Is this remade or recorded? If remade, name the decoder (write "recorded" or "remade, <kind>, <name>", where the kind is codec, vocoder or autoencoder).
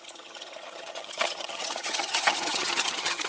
remade, vocoder, HiFi-GAN